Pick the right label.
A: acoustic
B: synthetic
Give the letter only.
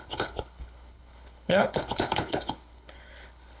B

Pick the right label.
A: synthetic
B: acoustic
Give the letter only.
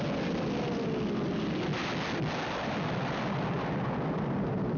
B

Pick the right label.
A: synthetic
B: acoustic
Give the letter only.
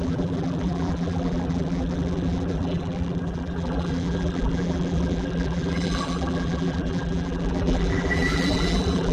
A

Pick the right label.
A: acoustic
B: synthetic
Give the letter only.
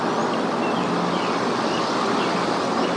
A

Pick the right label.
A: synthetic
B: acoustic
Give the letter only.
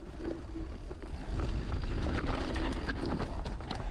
B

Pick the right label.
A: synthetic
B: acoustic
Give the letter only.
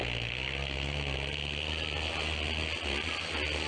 B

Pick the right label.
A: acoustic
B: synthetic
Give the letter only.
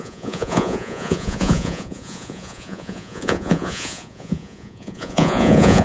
B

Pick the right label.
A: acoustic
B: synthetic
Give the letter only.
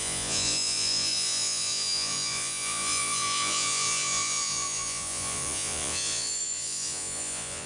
B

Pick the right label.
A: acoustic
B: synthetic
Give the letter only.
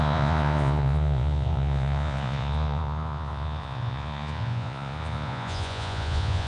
B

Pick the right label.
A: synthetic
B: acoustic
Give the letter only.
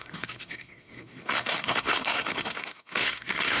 A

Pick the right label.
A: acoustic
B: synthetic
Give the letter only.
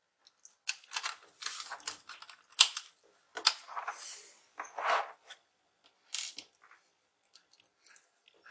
A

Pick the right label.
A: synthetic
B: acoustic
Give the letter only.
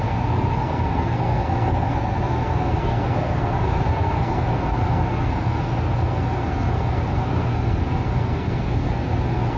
A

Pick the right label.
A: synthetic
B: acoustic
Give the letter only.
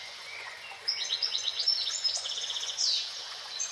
A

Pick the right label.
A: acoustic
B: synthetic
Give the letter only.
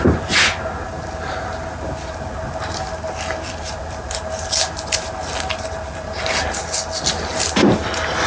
A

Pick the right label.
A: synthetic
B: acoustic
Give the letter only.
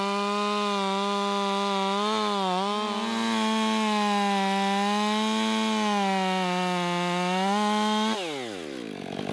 B